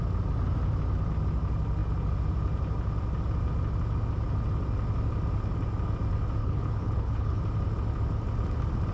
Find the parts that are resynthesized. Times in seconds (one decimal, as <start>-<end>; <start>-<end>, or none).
6.4-7.4